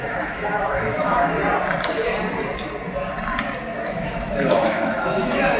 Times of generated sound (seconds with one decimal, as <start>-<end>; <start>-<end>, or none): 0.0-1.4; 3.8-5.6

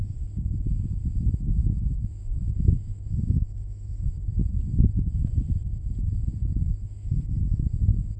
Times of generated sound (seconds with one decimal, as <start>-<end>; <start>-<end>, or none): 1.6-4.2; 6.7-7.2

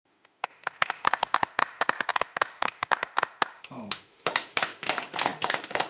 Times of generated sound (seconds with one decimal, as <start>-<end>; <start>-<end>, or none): 0.0-5.9

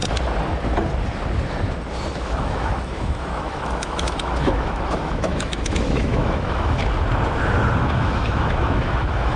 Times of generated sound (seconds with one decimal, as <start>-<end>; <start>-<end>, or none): 2.1-6.8; 7.8-9.4

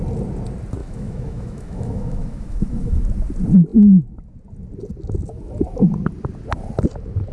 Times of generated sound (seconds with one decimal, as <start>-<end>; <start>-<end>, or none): 0.8-3.0

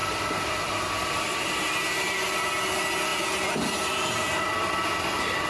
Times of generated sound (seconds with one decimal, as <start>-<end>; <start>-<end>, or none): none